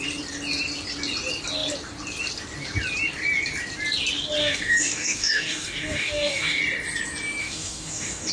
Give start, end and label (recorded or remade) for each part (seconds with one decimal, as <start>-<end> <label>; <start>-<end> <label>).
0.0-4.4 recorded; 4.4-6.6 remade; 6.6-7.4 recorded; 7.4-8.3 remade